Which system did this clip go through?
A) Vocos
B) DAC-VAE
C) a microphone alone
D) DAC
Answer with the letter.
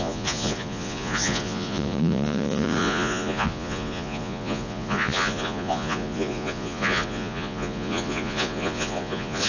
A